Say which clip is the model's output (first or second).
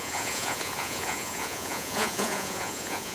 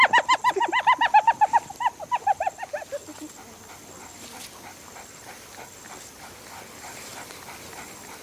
first